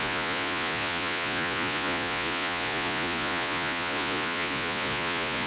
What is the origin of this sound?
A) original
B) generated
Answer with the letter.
B